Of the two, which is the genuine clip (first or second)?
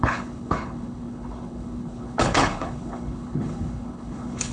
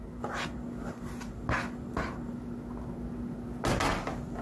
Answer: second